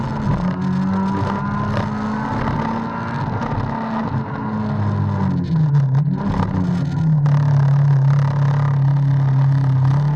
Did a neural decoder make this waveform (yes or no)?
no